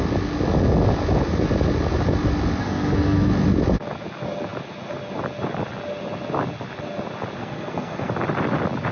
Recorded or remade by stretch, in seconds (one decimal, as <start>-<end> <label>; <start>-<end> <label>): 0.0-2.6 recorded; 2.6-3.3 remade; 3.3-7.4 recorded; 7.4-8.1 remade; 8.1-8.9 recorded